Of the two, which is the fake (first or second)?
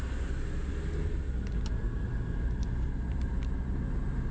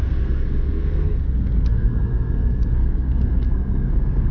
second